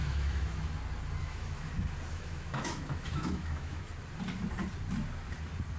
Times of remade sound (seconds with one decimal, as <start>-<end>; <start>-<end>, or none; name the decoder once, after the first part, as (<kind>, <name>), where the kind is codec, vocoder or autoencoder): 0.0-0.7 (autoencoder, DAC-VAE); 1.2-1.7; 2.1-3.8